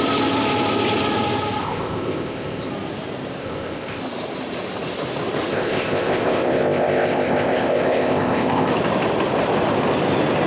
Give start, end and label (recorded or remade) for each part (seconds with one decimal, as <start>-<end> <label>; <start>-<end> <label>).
0.0-1.6 recorded; 1.6-2.7 remade; 2.7-3.4 recorded; 3.4-4.0 remade; 4.0-5.5 recorded; 5.5-8.7 remade; 8.7-10.5 recorded